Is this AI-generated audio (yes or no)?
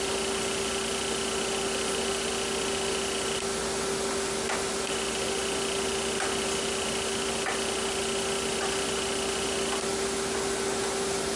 no